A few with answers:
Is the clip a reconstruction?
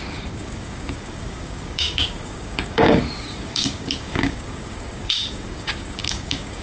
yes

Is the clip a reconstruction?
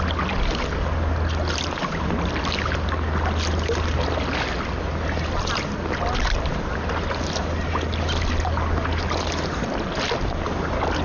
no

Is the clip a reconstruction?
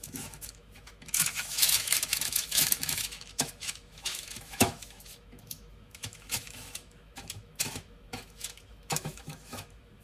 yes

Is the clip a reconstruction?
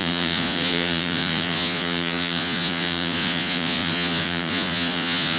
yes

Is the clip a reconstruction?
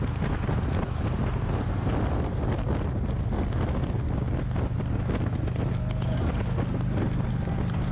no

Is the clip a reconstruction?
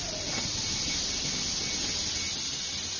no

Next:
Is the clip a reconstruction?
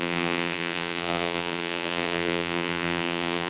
yes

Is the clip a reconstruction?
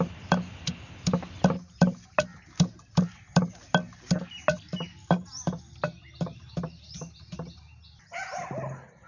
no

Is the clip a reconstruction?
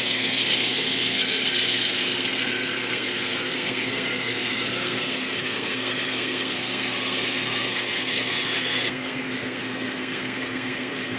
yes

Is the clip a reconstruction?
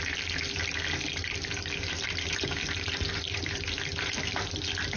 no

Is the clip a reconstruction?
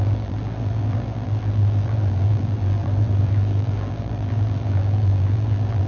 yes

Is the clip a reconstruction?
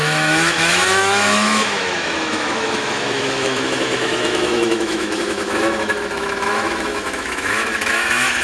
yes